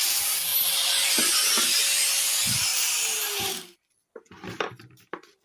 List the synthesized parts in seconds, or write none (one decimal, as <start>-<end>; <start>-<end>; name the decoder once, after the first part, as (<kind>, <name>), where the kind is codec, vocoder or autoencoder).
none